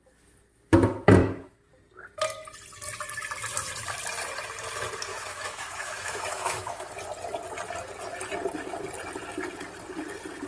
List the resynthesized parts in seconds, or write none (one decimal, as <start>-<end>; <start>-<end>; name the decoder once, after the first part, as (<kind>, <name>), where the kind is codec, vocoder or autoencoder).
1.2-1.7 (autoencoder, DAC-VAE); 5.1-6.9